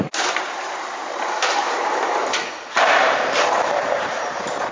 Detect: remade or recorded remade